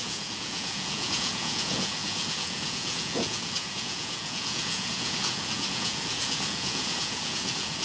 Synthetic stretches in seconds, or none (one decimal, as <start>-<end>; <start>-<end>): 0.0-7.8

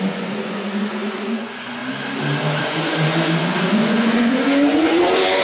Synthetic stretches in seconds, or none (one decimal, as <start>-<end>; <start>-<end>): 0.0-1.8; 2.6-5.4